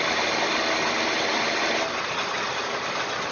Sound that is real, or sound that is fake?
real